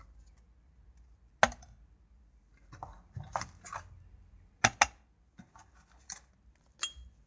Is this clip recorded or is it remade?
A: recorded